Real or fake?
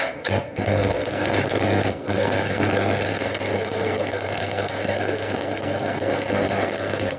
fake